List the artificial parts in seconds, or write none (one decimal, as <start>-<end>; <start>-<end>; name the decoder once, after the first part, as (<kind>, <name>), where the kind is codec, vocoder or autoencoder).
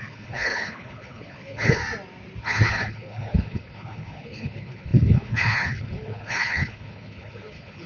0.0-1.8 (codec, HILCodec); 2.4-7.9